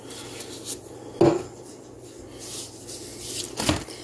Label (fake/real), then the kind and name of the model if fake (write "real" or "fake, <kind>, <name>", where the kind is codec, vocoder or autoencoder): real